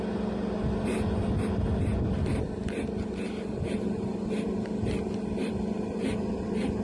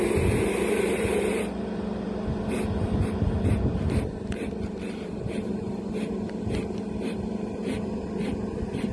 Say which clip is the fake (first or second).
second